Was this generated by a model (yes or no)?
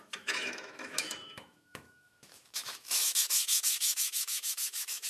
yes